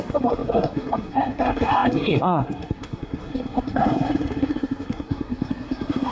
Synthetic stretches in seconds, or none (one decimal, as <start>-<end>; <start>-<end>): 0.0-6.1